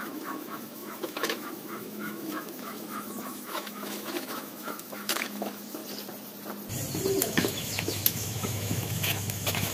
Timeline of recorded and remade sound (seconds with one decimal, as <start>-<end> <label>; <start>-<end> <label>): 0.0-5.8 remade; 5.8-7.2 recorded; 7.2-9.7 remade